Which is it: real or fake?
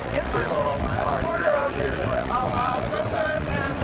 fake